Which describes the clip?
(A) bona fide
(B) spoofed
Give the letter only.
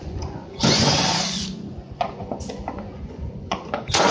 B